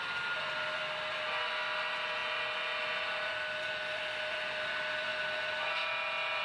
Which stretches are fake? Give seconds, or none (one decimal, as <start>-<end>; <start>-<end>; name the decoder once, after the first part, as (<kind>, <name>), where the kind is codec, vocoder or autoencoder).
none